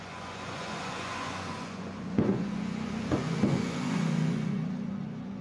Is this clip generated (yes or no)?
yes